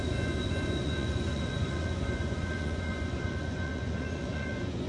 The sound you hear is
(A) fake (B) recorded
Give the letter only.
A